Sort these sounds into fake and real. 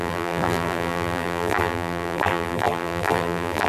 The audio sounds fake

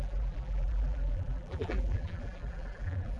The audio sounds fake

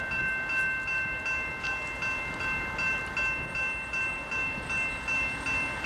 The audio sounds real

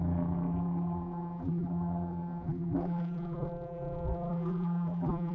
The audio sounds fake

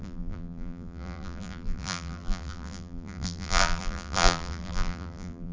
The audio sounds fake